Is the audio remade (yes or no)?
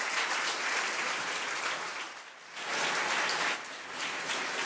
no